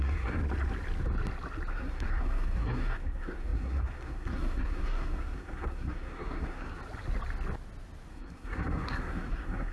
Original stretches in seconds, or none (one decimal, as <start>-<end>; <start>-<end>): 0.4-1.7; 6.8-8.1